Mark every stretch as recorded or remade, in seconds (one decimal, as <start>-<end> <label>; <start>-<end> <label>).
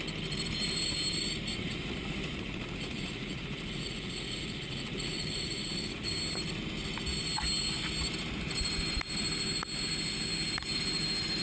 0.0-1.5 recorded; 1.5-6.1 remade; 6.1-11.4 recorded